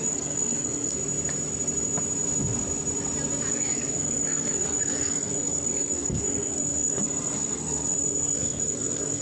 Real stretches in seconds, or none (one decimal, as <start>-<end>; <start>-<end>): 1.0-3.5